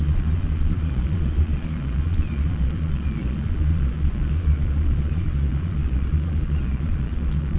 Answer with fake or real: fake